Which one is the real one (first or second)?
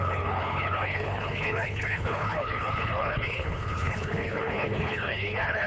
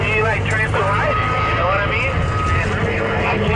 second